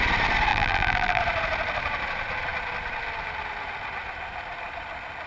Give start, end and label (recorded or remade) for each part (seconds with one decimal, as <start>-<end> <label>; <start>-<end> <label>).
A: 0.0-0.5 recorded; 0.5-1.2 remade; 1.2-5.3 recorded